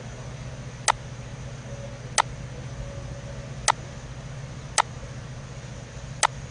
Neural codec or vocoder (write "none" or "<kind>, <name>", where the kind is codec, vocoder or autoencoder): none